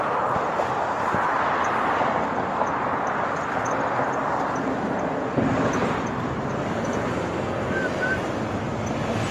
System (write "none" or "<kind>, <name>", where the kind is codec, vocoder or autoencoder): none